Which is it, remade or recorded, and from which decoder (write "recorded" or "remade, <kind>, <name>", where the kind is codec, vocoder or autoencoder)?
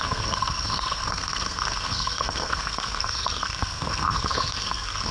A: remade, codec, SNAC